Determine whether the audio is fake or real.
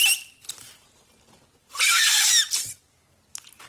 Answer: real